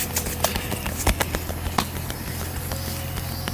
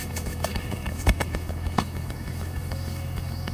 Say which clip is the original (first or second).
first